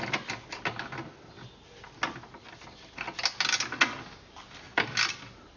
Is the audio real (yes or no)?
yes